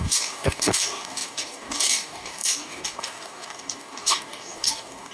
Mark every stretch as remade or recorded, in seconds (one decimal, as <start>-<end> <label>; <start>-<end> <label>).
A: 0.0-5.1 remade